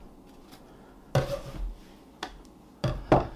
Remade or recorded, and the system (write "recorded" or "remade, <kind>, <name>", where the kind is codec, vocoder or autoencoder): recorded